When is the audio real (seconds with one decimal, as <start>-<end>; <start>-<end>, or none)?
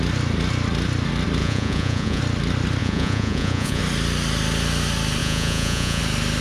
0.0-1.4; 2.2-2.8; 3.8-5.2; 6.0-6.4